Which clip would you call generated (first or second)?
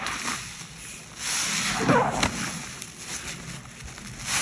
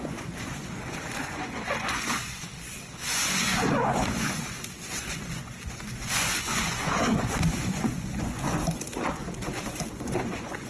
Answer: second